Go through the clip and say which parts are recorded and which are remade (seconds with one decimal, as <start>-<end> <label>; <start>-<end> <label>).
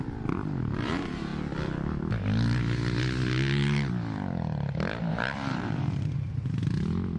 0.0-1.3 remade; 1.3-5.1 recorded; 5.1-6.6 remade; 6.6-7.2 recorded